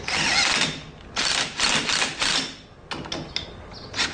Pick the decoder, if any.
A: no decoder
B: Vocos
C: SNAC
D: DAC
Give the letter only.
A